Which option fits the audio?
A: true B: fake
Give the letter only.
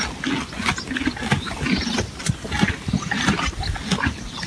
A